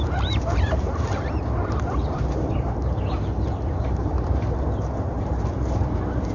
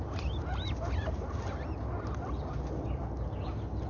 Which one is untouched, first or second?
second